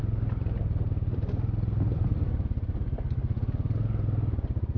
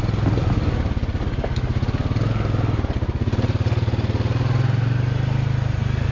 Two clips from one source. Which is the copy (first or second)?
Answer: first